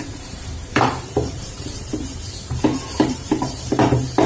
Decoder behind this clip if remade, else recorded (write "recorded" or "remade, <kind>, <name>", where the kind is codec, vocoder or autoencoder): remade, vocoder, BigVGAN v2